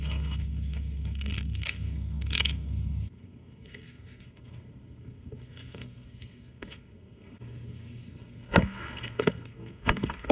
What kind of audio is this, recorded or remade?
remade